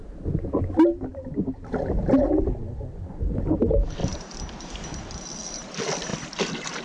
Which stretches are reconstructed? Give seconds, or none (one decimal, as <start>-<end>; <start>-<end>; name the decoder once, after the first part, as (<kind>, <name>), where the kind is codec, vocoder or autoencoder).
4.0-4.7 (vocoder, BigVGAN v2); 6.1-6.8